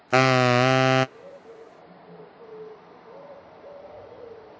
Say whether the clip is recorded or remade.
recorded